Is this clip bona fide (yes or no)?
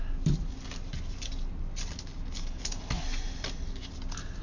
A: yes